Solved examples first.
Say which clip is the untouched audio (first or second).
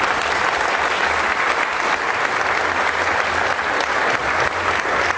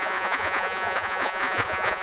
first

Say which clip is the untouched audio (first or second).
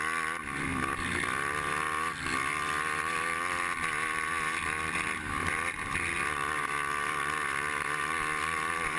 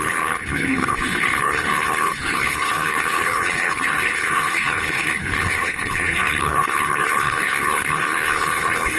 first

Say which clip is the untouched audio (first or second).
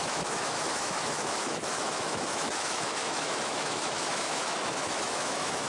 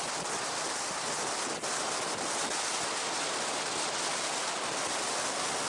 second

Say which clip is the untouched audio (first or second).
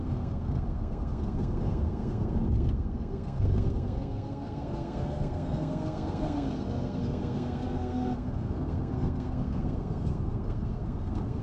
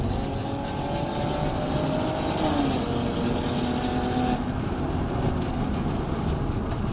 second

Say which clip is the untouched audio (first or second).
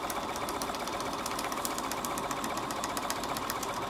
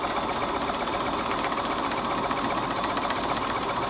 second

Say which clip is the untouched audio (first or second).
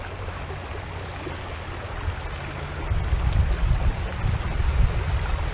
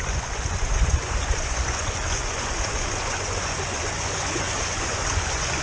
first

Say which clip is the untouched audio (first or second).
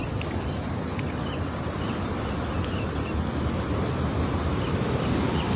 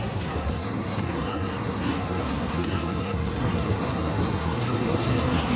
first